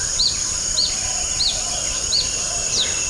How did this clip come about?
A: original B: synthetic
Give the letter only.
B